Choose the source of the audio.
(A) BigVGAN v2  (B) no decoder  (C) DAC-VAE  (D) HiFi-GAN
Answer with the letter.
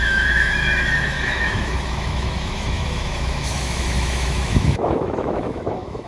C